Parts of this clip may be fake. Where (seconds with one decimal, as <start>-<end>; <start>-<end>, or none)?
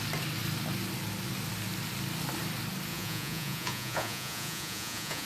2.9-5.3